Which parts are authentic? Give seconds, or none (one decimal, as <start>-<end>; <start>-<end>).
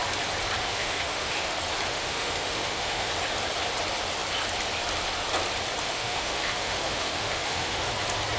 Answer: 0.0-0.6; 1.5-1.9; 3.1-5.8; 7.9-8.4